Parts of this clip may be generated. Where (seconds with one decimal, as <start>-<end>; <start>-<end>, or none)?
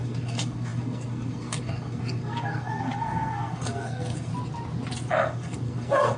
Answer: 0.0-4.3; 5.1-6.2